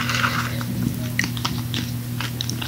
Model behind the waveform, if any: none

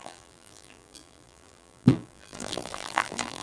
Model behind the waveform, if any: vocoder, BigVGAN v2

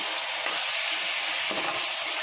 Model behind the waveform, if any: none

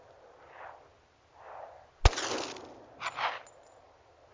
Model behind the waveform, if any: none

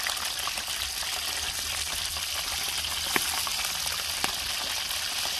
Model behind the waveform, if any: none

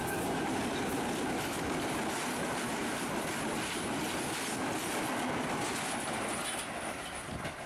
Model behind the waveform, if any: none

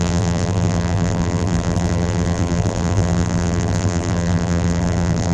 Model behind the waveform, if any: vocoder, BigVGAN v2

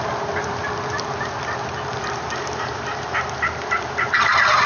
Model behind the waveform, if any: vocoder, BigVGAN v2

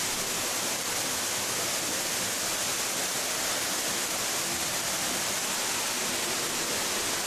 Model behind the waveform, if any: none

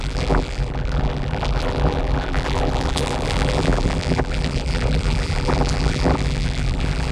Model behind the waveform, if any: vocoder, BigVGAN v2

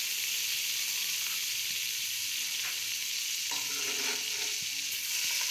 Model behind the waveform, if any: none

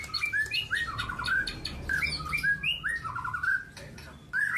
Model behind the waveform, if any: none